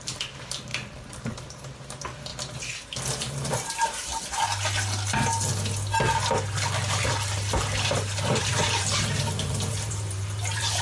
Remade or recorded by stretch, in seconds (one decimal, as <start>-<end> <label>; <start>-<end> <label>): 0.0-2.3 remade; 2.3-3.0 recorded; 3.0-4.1 remade; 4.1-8.4 recorded; 8.4-10.8 remade